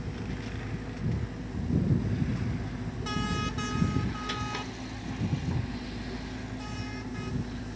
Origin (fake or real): real